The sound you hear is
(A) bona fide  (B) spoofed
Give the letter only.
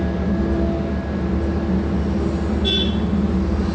A